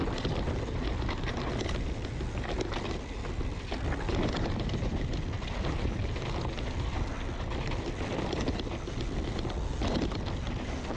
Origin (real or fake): real